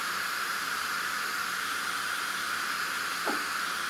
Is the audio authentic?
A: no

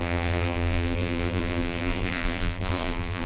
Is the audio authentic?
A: no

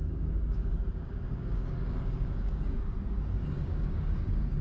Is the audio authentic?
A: no